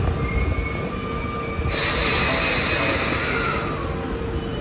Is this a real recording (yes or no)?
yes